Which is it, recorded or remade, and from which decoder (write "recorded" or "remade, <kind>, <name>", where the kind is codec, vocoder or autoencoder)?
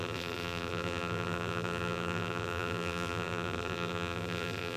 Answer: remade, vocoder, BigVGAN v2